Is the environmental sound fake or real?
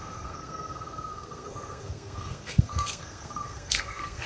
fake